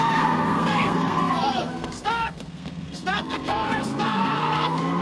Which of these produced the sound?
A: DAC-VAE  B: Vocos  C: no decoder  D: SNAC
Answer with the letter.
D